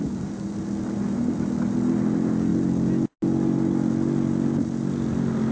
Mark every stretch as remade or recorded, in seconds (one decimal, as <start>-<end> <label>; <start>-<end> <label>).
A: 0.0-5.5 recorded